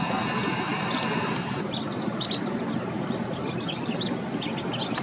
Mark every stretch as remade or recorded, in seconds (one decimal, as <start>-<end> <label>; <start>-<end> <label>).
0.0-0.7 recorded; 0.7-3.7 remade; 3.7-5.0 recorded